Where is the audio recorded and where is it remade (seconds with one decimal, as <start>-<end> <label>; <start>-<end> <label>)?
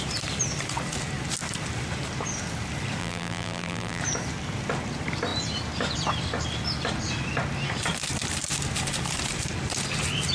0.0-3.0 recorded; 3.0-4.0 remade; 4.0-10.3 recorded